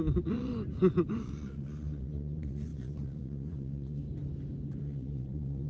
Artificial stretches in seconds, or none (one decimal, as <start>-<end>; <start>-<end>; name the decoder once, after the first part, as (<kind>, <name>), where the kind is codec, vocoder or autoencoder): 0.0-0.5 (vocoder, Vocos); 1.1-4.0; 4.8-5.7